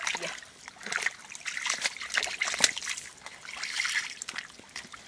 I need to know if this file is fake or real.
real